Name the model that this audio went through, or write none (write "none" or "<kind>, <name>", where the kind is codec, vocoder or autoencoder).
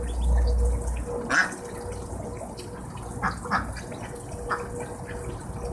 none